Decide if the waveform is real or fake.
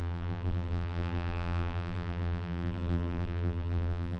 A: fake